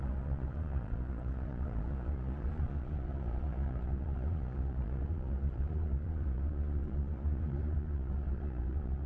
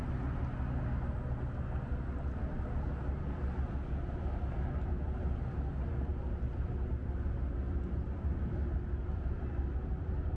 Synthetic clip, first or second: first